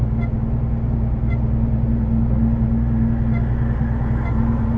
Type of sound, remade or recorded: recorded